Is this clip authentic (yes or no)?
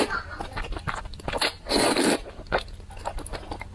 yes